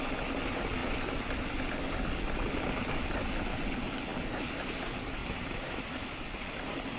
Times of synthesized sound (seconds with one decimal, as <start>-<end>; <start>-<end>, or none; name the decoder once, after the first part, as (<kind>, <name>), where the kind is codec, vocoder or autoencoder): 5.2-6.2 (vocoder, BigVGAN v2)